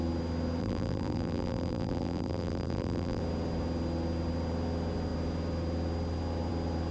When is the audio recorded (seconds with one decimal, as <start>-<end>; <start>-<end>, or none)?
0.0-0.6; 3.2-6.9